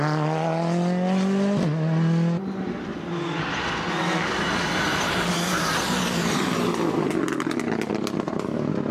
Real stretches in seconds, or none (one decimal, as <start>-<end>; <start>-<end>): 0.0-4.9; 6.4-8.9